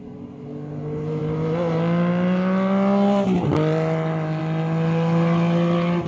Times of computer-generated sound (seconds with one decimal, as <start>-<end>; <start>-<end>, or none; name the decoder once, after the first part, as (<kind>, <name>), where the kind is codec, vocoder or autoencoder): 1.2-4.4 (vocoder, BigVGAN v2)